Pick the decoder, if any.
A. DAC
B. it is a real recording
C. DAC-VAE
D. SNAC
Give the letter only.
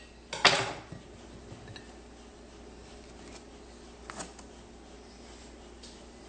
B